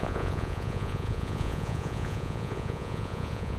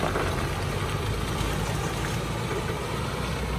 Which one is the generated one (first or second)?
first